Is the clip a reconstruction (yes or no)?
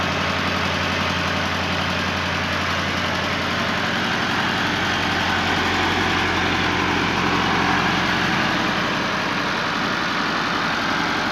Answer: no